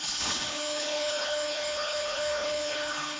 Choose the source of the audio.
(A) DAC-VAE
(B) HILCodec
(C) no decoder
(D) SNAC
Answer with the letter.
B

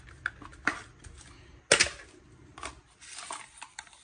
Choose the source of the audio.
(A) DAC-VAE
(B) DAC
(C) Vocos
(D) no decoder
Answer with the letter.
D